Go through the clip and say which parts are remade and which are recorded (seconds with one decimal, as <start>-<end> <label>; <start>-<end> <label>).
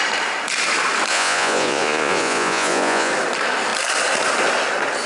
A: 0.0-1.1 recorded; 1.1-3.1 remade; 3.1-5.1 recorded